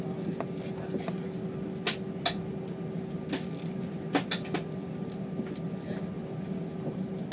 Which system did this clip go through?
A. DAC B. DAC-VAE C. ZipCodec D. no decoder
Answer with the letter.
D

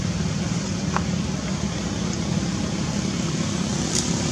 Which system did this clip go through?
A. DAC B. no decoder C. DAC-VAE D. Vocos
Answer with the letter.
B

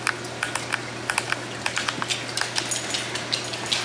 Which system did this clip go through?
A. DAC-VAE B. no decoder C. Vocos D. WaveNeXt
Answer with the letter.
B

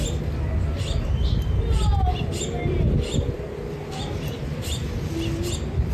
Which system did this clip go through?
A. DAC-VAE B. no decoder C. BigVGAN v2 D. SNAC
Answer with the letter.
B